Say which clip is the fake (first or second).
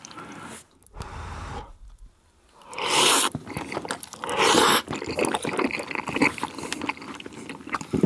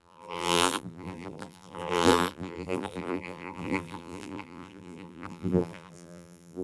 second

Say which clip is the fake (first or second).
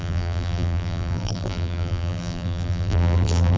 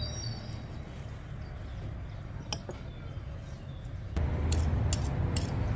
first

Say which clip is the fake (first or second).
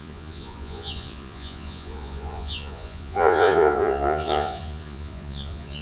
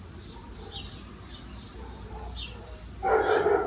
first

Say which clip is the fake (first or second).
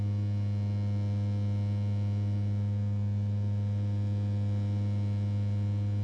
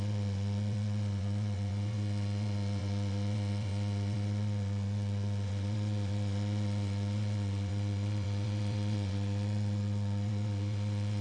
second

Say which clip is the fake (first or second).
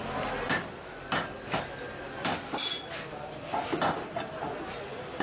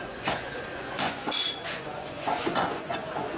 second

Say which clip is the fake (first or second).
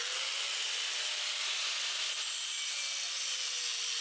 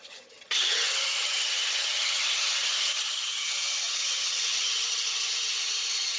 second